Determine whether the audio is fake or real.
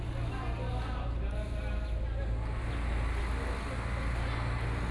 real